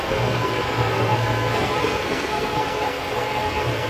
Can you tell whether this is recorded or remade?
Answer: remade